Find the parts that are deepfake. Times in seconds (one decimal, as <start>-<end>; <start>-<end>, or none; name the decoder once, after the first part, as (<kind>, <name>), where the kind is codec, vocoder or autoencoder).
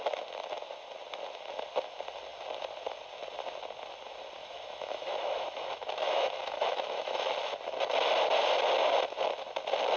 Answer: 4.4-7.3 (autoencoder, DAC-VAE)